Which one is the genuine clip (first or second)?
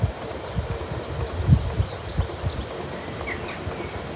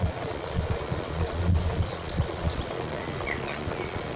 first